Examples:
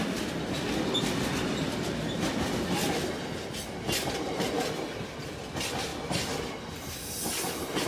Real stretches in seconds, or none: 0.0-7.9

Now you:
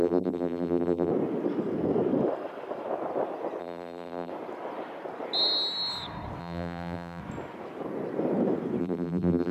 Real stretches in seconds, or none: 1.1-3.6; 4.3-6.4; 7.2-8.8

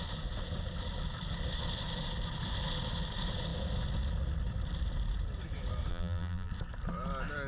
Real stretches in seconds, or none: 0.0-5.9; 6.5-7.5

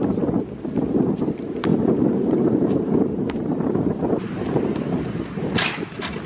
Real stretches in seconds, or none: 0.0-1.7; 5.5-6.3

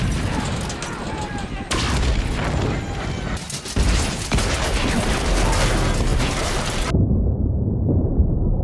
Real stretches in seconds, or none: 0.0-6.1; 8.1-8.6